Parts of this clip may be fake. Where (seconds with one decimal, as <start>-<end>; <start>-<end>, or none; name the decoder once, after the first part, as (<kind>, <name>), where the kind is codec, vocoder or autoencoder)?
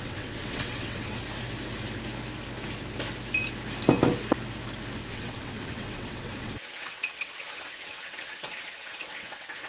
0.0-1.2 (vocoder, WaveNeXt); 5.1-9.7